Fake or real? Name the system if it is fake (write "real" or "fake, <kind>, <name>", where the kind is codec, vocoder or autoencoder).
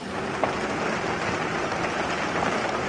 real